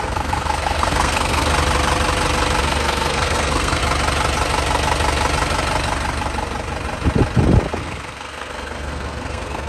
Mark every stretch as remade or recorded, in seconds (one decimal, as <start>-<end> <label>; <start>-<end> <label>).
0.0-1.5 remade; 1.5-2.6 recorded; 2.6-3.8 remade; 3.8-7.8 recorded; 7.8-9.7 remade